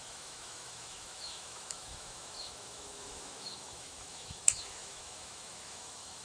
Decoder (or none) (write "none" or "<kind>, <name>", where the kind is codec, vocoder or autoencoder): autoencoder, DAC-VAE